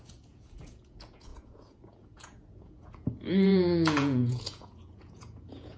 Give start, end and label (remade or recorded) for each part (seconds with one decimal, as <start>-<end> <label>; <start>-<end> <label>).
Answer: 0.0-5.8 remade